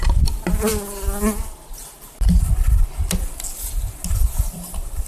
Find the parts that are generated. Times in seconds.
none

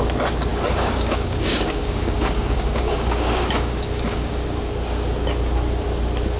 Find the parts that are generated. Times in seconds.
0.5-4.3

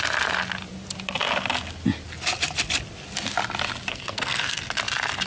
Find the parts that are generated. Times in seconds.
3.9-4.6

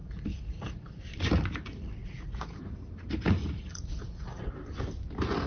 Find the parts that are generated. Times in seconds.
0.0-1.0; 2.0-2.6; 3.4-4.5

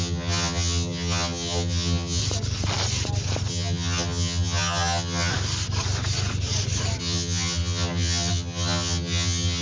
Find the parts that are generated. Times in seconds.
0.0-2.2; 3.5-5.3; 7.0-9.6

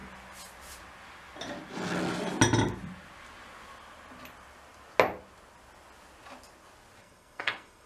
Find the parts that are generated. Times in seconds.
7.0-7.9

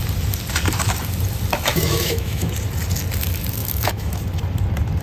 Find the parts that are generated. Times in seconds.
1.7-2.5; 3.6-4.2

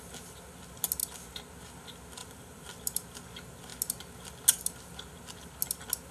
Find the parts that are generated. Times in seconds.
2.2-2.8